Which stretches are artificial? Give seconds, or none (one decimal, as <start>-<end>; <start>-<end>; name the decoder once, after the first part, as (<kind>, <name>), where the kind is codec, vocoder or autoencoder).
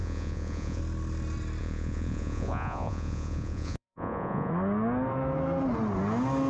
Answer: 0.0-0.8 (vocoder, Vocos); 1.6-4.5